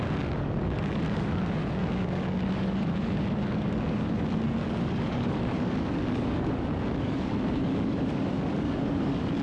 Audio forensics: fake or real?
fake